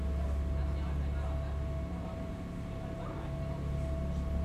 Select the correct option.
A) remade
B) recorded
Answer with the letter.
B